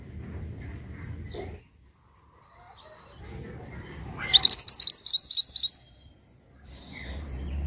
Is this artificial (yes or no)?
no